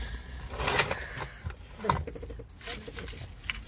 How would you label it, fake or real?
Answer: real